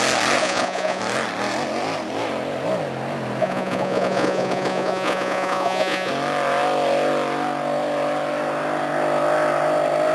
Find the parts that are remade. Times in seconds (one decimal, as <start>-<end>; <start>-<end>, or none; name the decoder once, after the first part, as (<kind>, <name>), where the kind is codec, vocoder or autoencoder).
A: 0.4-1.0 (vocoder, Vocos); 3.4-6.1